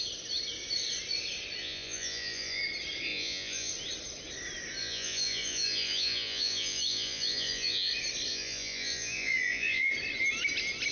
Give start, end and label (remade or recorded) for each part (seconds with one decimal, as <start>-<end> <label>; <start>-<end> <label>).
0.0-1.6 recorded; 1.6-2.6 remade; 2.6-3.1 recorded; 3.1-3.7 remade; 3.7-4.8 recorded; 4.8-7.9 remade; 7.9-8.3 recorded; 8.3-9.9 remade; 9.9-10.9 recorded